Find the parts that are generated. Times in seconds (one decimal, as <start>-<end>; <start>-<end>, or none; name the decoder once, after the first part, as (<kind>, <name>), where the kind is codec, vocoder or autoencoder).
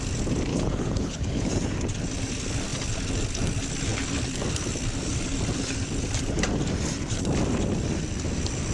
0.5-1.5 (codec, HILCodec)